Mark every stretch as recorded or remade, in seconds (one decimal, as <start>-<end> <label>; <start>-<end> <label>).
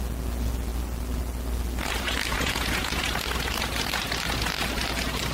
0.0-2.3 recorded; 2.3-3.0 remade; 3.0-5.3 recorded